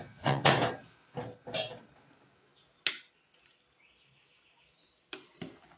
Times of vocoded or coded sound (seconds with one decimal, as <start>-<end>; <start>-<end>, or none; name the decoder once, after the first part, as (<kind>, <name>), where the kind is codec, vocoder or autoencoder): 0.0-0.5 (vocoder, Vocos)